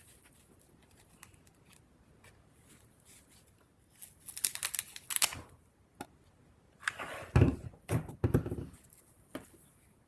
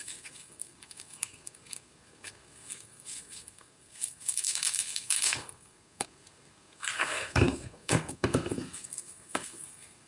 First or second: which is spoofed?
second